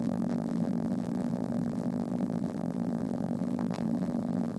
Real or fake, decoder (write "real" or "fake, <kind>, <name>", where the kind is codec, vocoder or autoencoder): fake, vocoder, BigVGAN v2